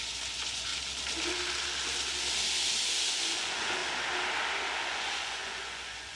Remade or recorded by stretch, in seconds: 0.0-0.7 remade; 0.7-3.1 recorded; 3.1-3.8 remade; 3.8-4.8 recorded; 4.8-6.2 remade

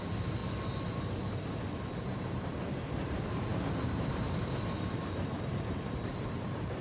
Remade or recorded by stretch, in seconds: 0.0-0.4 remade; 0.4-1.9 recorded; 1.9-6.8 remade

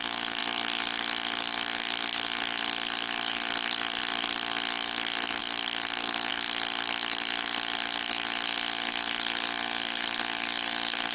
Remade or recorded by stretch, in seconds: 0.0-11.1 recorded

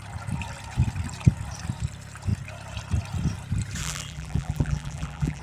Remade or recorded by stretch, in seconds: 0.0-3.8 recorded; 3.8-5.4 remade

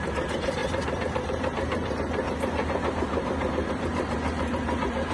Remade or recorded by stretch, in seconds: 0.0-5.1 remade